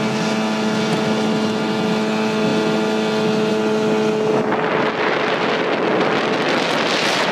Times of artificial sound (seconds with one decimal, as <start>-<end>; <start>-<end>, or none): none